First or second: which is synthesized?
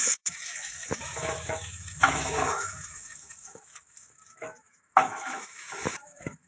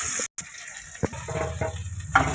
first